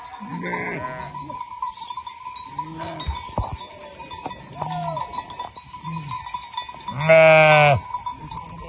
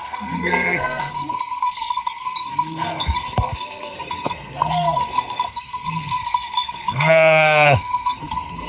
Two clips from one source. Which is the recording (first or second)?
first